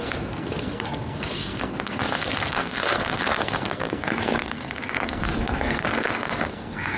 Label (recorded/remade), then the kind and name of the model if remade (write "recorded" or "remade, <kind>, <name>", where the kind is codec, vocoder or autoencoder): remade, codec, SNAC